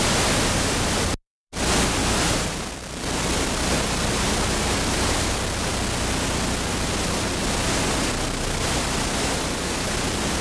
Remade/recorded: recorded